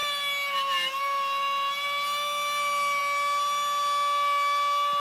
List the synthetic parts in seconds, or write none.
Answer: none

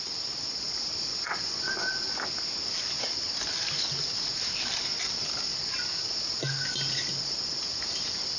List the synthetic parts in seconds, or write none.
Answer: 1.1-2.1 (vocoder, Vocos)